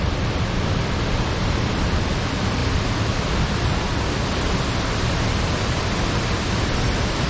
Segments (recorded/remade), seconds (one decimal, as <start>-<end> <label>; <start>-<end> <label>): 0.0-2.6 remade; 2.6-6.8 recorded; 6.8-7.3 remade